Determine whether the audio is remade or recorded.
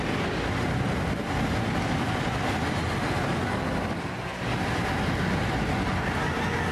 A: recorded